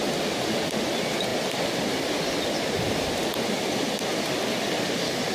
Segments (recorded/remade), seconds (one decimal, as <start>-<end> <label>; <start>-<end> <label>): 0.0-5.3 recorded